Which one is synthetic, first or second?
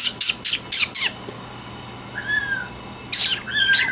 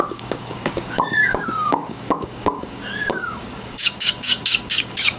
second